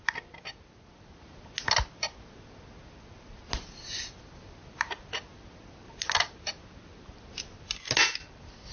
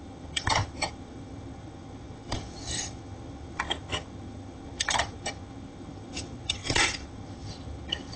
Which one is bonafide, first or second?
first